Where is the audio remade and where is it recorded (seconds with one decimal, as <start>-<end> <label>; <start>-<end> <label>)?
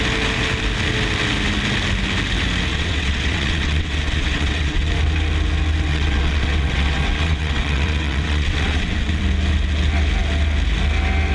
0.0-2.7 recorded; 2.7-4.9 remade; 4.9-5.9 recorded; 5.9-9.2 remade; 9.2-11.3 recorded